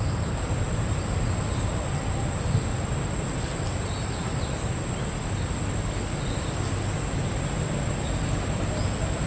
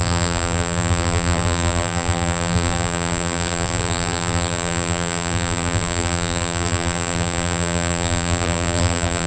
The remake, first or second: second